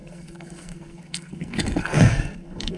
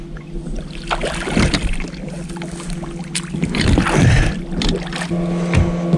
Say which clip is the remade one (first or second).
first